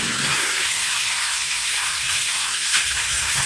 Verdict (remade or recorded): remade